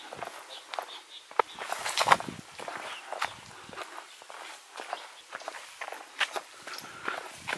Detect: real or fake real